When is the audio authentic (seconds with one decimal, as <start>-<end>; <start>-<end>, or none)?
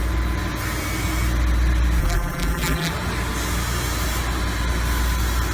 0.0-2.0; 2.9-5.5